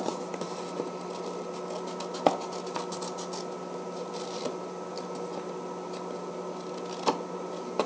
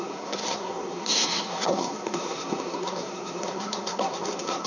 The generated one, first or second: second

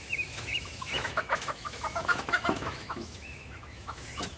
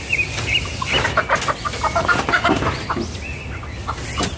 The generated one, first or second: first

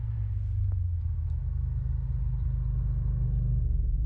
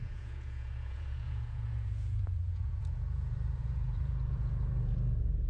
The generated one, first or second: second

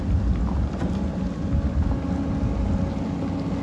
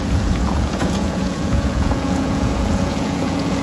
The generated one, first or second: second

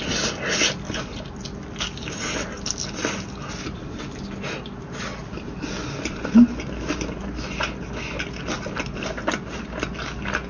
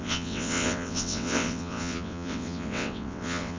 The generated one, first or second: second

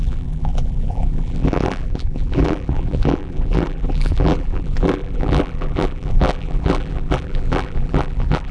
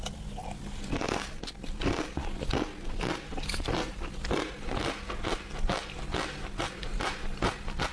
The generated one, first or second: first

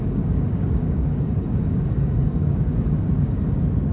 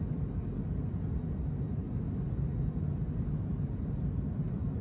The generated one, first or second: first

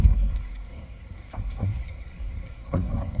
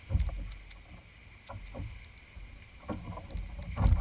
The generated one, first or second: first